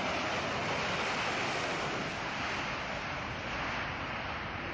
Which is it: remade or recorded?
recorded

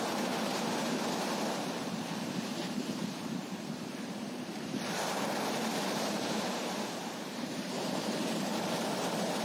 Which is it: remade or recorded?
remade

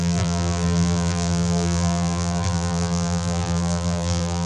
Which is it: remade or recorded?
remade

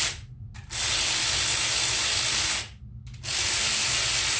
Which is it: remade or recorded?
recorded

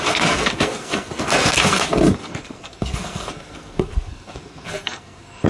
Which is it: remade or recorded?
remade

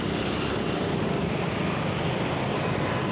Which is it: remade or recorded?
recorded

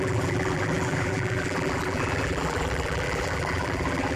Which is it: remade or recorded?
remade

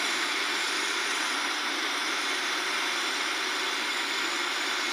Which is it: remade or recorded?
remade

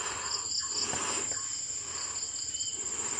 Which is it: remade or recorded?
recorded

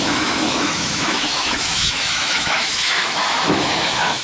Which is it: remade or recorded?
remade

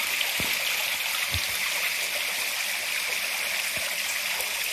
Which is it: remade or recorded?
recorded